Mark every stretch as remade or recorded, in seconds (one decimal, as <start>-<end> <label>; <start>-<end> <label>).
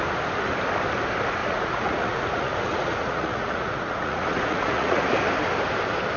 0.0-1.4 recorded; 1.4-5.1 remade; 5.1-6.2 recorded